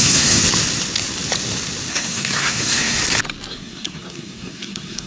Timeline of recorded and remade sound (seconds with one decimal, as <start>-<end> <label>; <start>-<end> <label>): 0.0-0.4 remade; 0.4-1.9 recorded; 1.9-3.0 remade; 3.0-3.5 recorded; 3.5-5.1 remade